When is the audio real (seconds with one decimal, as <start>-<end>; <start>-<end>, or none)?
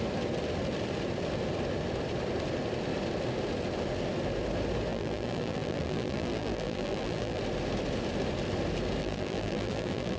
0.0-4.9; 7.4-9.0